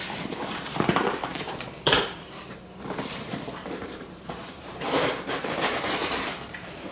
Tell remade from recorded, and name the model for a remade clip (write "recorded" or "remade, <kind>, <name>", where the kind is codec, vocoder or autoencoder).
remade, vocoder, BigVGAN v2